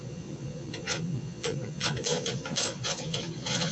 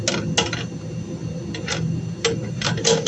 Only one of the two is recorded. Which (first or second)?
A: second